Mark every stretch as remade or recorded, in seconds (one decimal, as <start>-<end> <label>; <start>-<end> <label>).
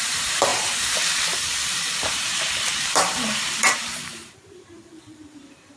0.0-5.8 remade